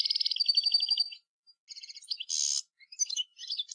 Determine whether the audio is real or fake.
real